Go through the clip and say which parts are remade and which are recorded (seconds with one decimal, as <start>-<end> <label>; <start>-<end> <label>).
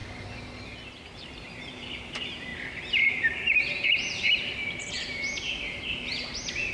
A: 0.0-0.9 recorded; 0.9-6.7 remade